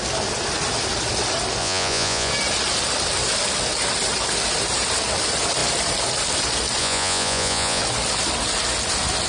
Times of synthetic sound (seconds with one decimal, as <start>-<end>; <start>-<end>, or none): 1.6-2.3; 6.8-7.8